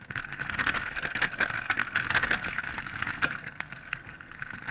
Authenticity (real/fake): fake